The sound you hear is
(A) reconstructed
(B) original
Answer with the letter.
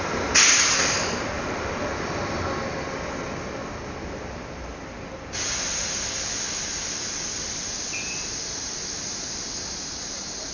B